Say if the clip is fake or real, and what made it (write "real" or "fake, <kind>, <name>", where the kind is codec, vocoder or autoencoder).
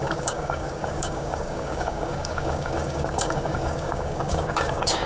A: fake, codec, DAC